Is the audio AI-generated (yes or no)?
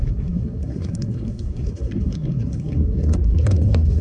yes